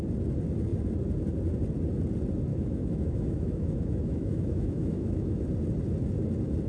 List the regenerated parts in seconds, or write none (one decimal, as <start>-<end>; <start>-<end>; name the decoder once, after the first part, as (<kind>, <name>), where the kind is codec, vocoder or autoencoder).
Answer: 2.5-5.4 (autoencoder, DAC-VAE)